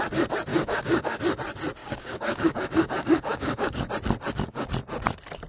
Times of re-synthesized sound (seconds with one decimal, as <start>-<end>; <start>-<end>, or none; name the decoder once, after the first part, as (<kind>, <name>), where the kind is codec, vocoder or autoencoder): 0.5-1.2 (codec, DAC); 1.8-3.9